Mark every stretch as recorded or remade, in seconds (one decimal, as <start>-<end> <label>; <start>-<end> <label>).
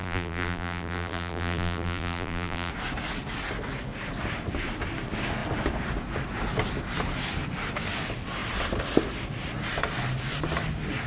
0.0-2.7 remade; 2.7-11.1 recorded